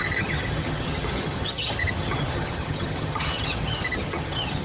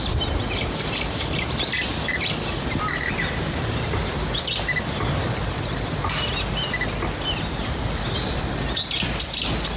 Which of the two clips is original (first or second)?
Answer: second